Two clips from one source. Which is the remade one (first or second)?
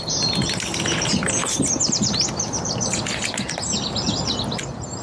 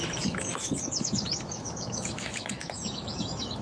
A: second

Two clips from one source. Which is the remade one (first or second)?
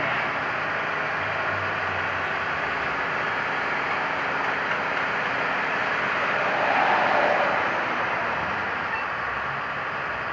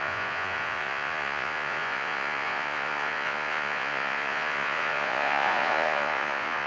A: second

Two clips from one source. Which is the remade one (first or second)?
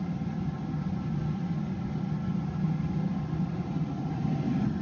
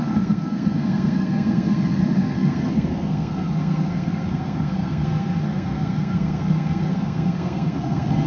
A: second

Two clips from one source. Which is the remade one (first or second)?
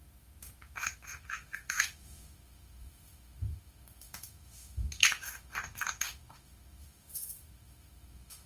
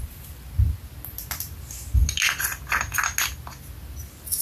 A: first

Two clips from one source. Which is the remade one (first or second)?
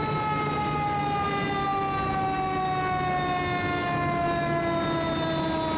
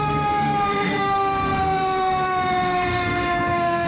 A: second